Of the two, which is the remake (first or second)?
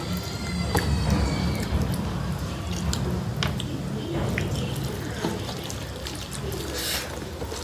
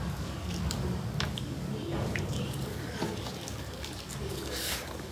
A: second